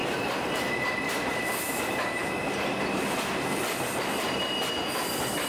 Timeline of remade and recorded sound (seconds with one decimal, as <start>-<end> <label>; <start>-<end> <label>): 0.0-1.8 remade; 1.8-5.5 recorded

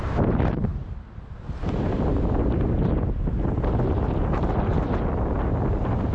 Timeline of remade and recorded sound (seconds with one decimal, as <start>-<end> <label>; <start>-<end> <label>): 0.0-6.1 recorded

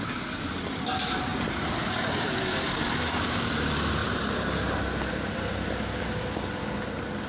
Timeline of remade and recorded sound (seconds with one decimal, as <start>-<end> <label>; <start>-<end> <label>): 0.0-7.3 recorded

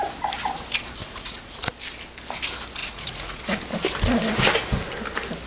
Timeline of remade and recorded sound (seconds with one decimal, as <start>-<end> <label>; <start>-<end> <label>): 0.0-1.0 recorded; 1.0-1.7 remade; 1.7-2.8 recorded; 2.8-3.4 remade; 3.4-5.5 recorded

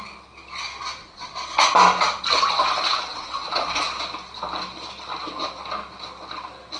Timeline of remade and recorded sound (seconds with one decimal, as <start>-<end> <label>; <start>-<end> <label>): 0.0-1.0 recorded; 1.0-1.6 remade; 1.6-3.1 recorded; 3.1-3.8 remade; 3.8-6.8 recorded